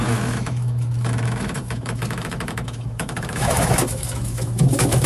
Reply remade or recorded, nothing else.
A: remade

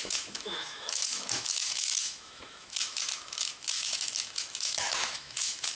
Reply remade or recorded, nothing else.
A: remade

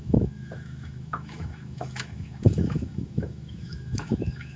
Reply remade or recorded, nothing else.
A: remade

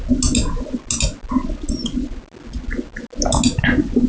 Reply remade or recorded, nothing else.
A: recorded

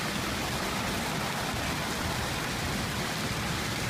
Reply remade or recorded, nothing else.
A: recorded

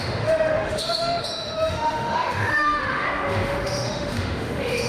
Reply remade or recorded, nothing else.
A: remade